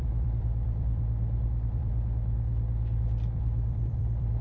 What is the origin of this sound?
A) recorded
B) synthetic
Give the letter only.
B